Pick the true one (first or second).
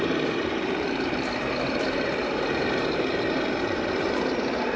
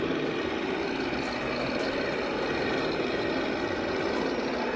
second